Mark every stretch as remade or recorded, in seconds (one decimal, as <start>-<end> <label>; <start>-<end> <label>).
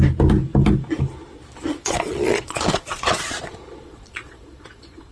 0.0-1.7 recorded; 1.7-5.1 remade